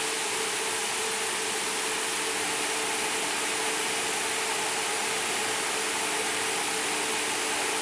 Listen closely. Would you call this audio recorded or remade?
recorded